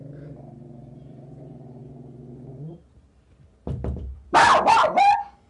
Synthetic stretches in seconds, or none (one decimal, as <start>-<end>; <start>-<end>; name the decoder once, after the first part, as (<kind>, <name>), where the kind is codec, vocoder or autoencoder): 0.0-1.8 (vocoder, BigVGAN v2); 3.9-4.5